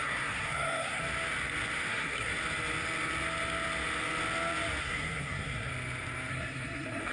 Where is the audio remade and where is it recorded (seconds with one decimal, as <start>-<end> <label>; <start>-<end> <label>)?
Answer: 0.0-1.0 remade; 1.0-1.9 recorded; 1.9-2.3 remade; 2.3-4.8 recorded; 4.8-5.7 remade; 5.7-6.3 recorded; 6.3-7.1 remade

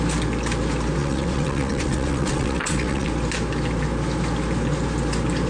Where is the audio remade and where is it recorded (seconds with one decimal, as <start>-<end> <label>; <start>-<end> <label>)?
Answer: 0.0-1.0 recorded; 1.0-3.1 remade; 3.1-5.5 recorded

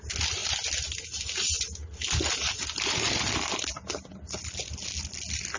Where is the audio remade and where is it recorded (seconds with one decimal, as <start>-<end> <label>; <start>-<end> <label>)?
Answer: 0.0-5.6 recorded

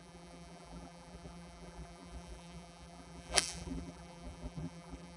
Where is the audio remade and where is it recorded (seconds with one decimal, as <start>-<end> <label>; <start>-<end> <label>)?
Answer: 0.0-5.2 remade

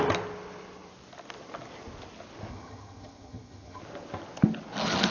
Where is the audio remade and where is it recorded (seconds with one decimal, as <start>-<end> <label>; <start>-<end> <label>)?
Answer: 0.0-2.5 recorded; 2.5-3.8 remade; 3.8-5.1 recorded

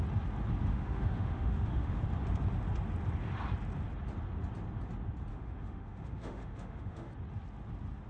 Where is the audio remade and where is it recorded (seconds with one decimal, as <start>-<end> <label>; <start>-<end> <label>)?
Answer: 0.0-0.7 recorded; 0.7-2.0 remade; 2.0-5.3 recorded; 5.3-7.1 remade; 7.1-8.1 recorded

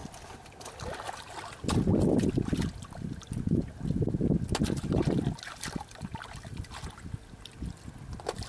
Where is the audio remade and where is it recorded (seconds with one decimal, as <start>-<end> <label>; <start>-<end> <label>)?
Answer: 0.0-8.5 recorded